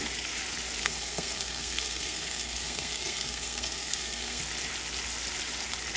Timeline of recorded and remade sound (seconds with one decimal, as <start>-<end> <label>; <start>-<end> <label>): 0.0-0.8 recorded; 0.8-4.4 remade; 4.4-6.0 recorded